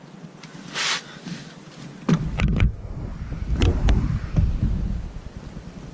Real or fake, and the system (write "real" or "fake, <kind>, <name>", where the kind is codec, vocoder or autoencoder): real